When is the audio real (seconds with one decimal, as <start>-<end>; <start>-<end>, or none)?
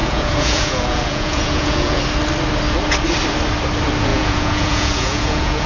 2.0-4.1